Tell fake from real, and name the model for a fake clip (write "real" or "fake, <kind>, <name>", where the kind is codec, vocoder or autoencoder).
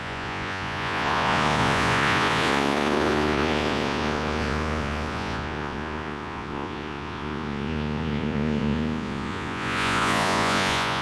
fake, vocoder, Vocos